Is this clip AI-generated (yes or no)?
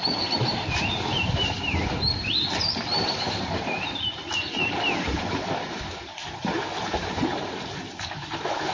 yes